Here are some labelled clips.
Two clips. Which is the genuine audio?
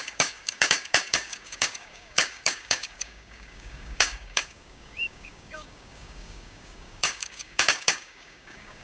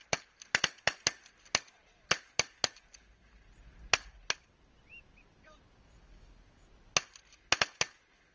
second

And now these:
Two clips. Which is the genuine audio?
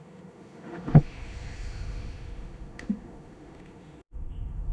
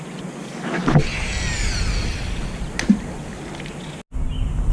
second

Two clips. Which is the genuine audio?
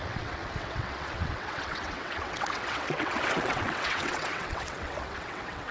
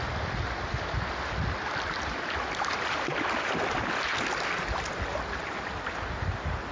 second